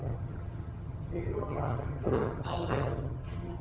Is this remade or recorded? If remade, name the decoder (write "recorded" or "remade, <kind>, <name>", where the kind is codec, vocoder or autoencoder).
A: remade, vocoder, HiFi-GAN